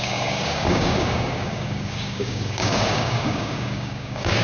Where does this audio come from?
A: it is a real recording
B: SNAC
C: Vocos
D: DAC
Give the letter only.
D